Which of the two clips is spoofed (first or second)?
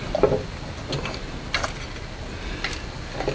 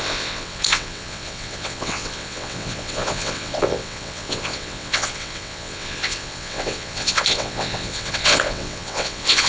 second